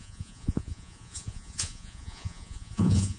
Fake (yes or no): yes